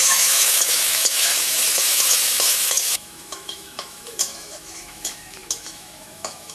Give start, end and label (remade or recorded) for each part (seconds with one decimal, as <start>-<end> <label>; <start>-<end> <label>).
0.0-6.5 remade